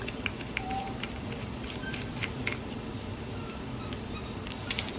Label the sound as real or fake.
real